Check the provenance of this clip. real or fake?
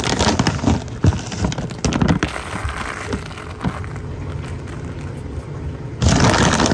real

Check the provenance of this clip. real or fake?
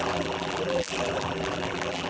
fake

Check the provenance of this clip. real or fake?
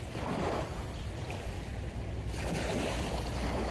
real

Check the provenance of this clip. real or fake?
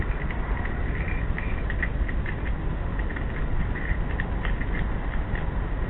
real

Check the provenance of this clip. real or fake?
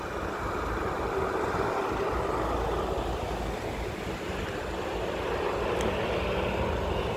real